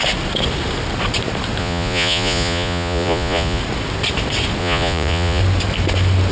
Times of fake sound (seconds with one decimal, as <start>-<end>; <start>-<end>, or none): 1.6-3.6; 4.6-5.4